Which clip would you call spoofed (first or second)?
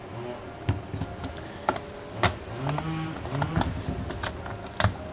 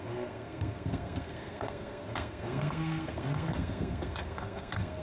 second